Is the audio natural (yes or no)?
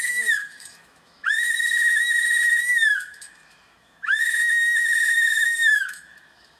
no